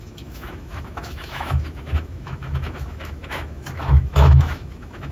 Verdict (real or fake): fake